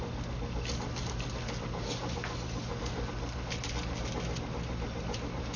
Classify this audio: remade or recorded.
recorded